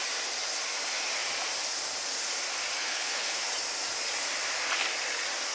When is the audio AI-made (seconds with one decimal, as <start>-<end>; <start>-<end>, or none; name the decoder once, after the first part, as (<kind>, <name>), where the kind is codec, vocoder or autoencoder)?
2.8-3.5 (codec, HILCodec)